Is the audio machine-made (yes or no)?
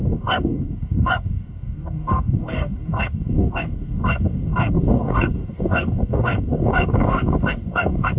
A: yes